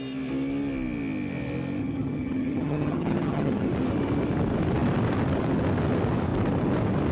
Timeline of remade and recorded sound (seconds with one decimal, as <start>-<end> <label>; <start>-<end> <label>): 0.0-1.8 recorded; 1.8-3.7 remade; 3.7-7.1 recorded